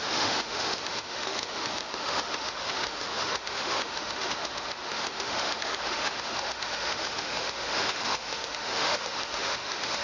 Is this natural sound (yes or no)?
no